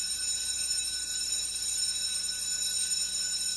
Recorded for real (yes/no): no